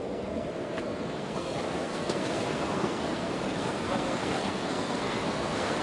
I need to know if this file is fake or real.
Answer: fake